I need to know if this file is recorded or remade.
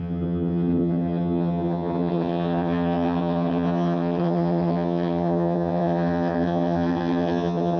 remade